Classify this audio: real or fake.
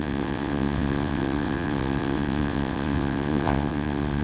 fake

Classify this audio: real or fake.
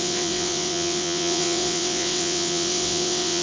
fake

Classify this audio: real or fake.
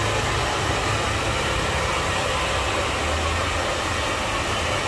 real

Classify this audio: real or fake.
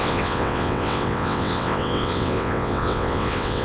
fake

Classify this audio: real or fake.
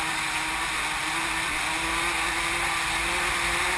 real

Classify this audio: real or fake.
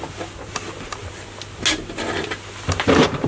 real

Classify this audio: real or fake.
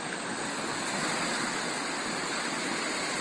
real